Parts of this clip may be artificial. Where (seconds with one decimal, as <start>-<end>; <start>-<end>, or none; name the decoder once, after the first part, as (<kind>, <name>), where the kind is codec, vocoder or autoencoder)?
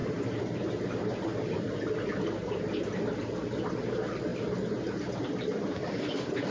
0.0-0.7 (vocoder, BigVGAN v2); 4.3-5.1